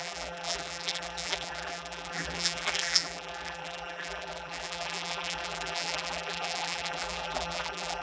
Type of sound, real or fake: fake